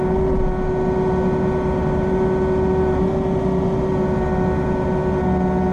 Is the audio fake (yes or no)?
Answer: no